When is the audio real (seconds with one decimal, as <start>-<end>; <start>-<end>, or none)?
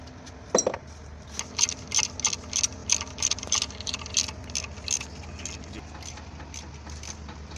0.0-7.6